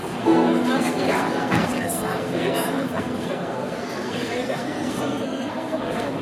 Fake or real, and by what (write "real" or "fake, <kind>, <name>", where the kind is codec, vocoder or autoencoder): fake, codec, SNAC